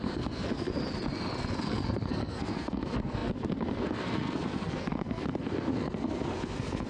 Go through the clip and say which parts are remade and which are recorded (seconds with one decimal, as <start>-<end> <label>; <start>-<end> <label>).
0.0-0.7 remade; 0.7-1.6 recorded; 1.6-6.9 remade